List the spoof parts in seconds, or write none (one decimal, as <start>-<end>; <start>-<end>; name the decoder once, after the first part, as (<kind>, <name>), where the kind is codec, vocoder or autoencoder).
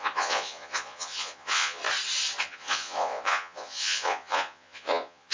0.0-1.8 (vocoder, Vocos); 2.4-5.3